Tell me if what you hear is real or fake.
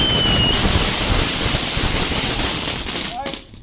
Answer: real